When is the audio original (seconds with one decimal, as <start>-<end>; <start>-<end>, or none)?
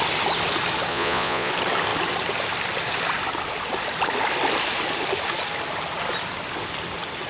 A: 0.0-0.9; 1.5-7.3